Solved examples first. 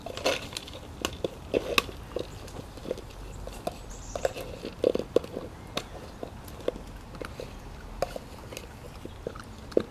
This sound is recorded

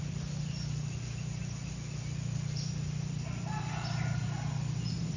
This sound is recorded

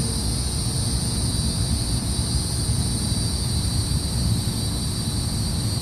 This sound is recorded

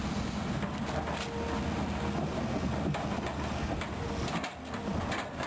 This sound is recorded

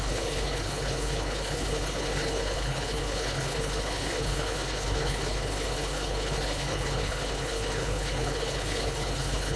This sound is remade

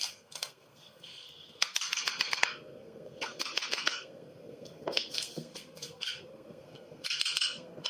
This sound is remade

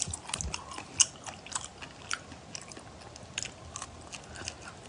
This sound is recorded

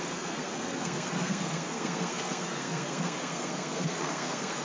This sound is remade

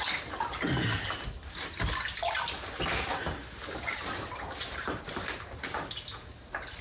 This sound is recorded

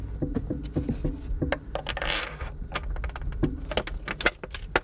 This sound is recorded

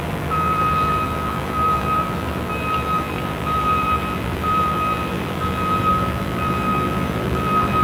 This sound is remade